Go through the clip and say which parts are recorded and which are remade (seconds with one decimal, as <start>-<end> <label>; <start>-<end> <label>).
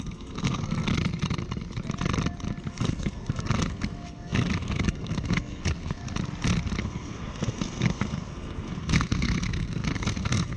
0.0-0.9 remade; 0.9-2.7 recorded; 2.7-6.0 remade; 6.0-6.8 recorded; 6.8-10.6 remade